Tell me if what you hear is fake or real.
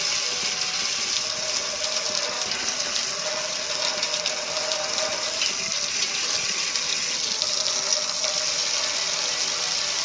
real